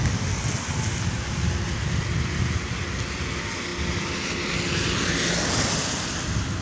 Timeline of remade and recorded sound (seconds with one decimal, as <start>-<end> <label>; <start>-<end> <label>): 0.0-6.6 recorded